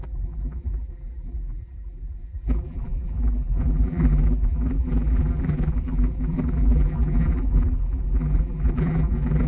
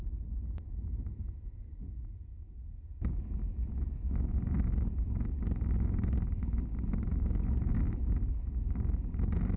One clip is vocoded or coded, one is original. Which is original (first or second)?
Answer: second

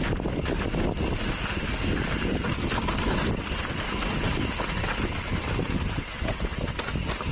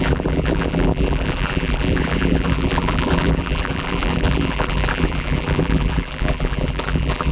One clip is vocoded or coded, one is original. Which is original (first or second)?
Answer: first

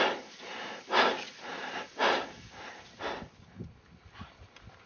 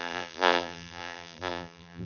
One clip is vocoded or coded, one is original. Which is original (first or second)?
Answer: first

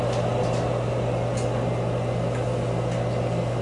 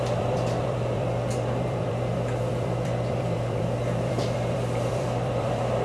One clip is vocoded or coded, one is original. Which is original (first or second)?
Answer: first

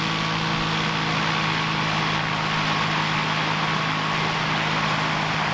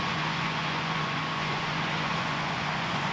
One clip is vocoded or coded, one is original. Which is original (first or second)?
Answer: first